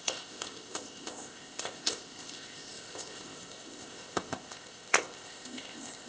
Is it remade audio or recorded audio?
remade